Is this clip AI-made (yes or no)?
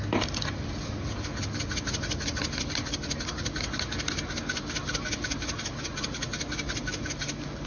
no